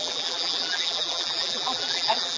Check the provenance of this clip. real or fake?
fake